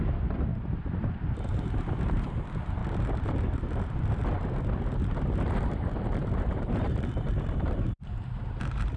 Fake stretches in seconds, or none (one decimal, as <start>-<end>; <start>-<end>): 0.0-0.5; 1.6-4.2; 6.1-9.0